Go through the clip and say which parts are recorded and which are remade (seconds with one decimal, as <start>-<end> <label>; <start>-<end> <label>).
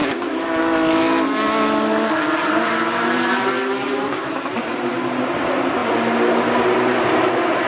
0.0-0.6 remade; 0.6-2.4 recorded; 2.4-4.9 remade; 4.9-7.7 recorded